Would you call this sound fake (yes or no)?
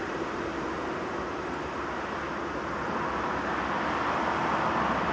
no